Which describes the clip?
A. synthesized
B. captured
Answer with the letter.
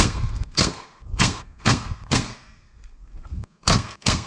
A